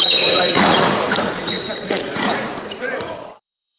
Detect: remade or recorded remade